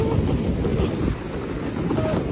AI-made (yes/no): no